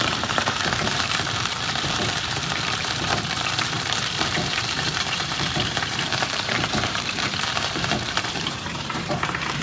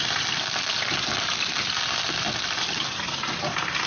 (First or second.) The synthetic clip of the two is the first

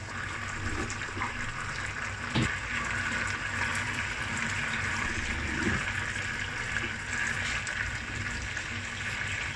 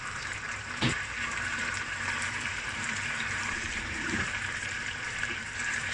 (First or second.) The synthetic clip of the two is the second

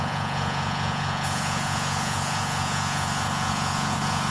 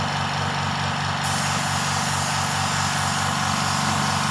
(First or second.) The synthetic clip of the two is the first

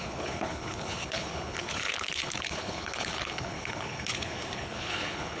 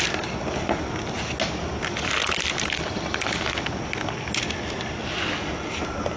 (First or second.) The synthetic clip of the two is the first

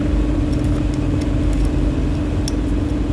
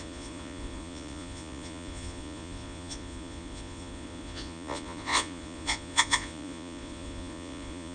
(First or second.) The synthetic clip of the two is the second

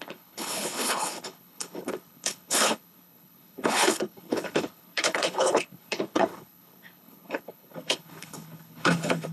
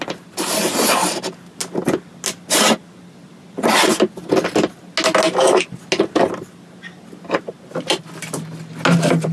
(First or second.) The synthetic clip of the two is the first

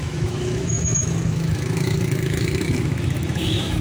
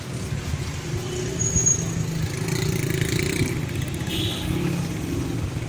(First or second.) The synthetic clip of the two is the first